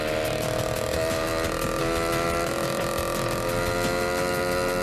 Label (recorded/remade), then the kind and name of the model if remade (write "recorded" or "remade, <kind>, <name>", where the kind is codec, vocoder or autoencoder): recorded